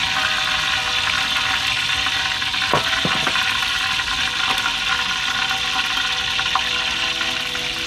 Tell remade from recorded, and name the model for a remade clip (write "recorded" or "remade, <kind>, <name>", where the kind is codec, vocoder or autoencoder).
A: recorded